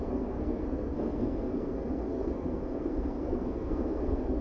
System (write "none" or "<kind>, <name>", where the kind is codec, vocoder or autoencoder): codec, SNAC